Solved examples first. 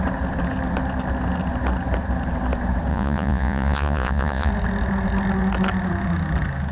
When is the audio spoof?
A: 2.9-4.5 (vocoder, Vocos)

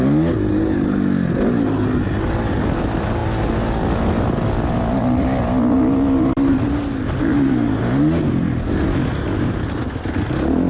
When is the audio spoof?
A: none

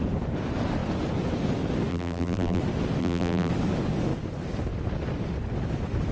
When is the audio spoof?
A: 1.9-2.6 (vocoder, BigVGAN v2); 3.0-3.5

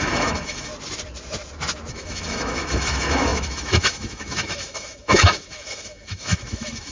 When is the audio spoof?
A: 0.0-0.7 (autoencoder, DAC-VAE); 1.9-6.9

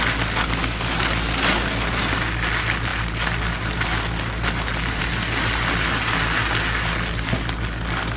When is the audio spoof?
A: none

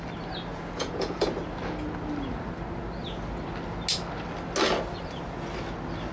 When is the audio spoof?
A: 0.5-1.3 (vocoder, Vocos)

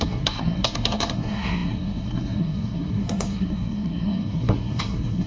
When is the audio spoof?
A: 0.0-5.3 (codec, SNAC)